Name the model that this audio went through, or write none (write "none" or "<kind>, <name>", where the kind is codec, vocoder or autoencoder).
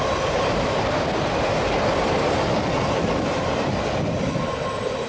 none